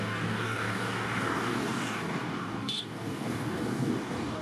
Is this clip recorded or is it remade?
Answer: remade